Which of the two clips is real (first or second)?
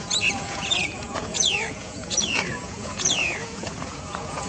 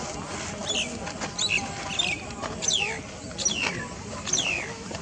second